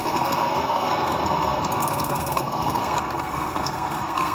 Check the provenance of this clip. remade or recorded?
remade